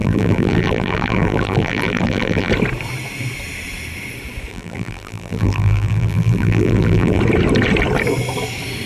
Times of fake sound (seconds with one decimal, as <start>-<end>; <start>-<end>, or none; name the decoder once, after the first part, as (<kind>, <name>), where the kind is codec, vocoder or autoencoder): 0.0-2.5 (vocoder, BigVGAN v2); 4.5-7.2